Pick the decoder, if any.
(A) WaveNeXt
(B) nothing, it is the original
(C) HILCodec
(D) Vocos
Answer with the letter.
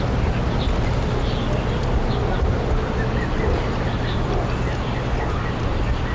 B